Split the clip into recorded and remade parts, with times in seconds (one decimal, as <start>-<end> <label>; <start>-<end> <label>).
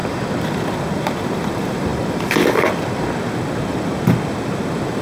0.0-5.0 remade